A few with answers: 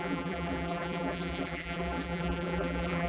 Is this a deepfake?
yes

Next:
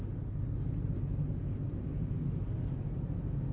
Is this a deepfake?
no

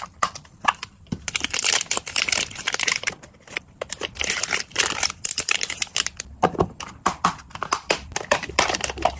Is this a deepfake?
yes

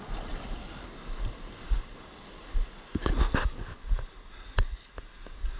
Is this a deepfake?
no